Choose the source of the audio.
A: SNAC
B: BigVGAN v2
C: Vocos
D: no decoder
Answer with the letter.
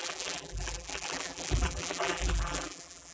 B